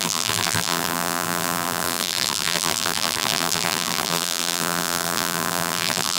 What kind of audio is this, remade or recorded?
remade